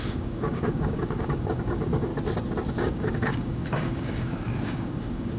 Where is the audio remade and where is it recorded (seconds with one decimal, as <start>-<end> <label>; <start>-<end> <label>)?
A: 0.0-2.1 remade; 2.1-2.7 recorded; 2.7-5.4 remade